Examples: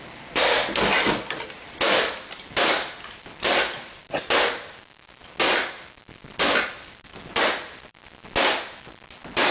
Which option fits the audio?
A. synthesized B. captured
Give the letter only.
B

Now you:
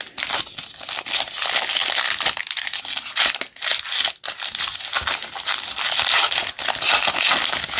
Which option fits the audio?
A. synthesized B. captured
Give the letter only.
B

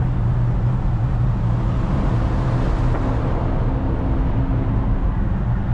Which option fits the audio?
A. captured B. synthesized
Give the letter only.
A